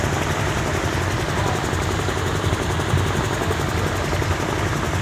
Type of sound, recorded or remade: recorded